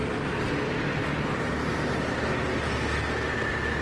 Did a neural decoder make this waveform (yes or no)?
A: no